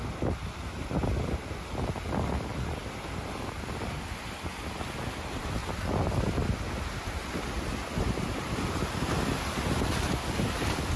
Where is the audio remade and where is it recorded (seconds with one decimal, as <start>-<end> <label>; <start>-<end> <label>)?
0.0-11.0 recorded